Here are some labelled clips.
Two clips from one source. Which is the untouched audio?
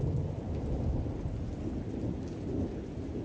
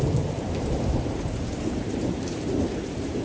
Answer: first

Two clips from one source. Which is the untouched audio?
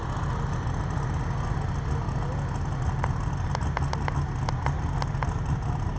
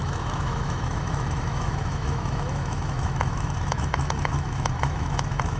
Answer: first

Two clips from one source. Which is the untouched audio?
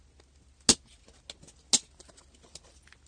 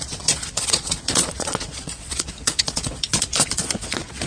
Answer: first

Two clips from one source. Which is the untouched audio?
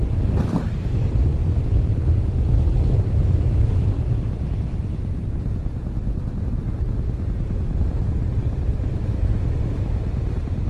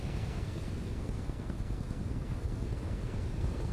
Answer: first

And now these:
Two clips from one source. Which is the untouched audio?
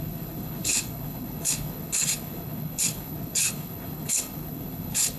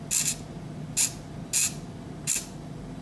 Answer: second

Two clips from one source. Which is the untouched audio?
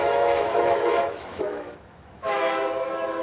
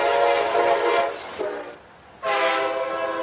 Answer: second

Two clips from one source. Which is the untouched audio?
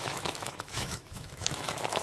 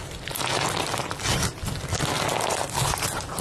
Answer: second